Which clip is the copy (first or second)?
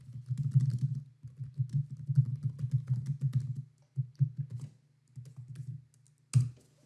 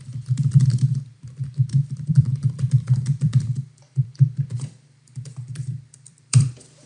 second